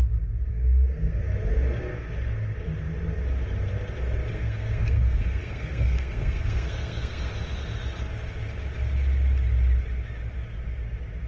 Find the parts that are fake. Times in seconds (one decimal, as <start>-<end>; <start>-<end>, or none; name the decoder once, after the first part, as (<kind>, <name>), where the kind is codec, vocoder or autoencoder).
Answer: 0.5-1.2 (codec, SNAC); 4.3-7.3